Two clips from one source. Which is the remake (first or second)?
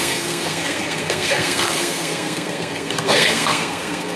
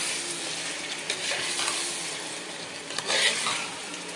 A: first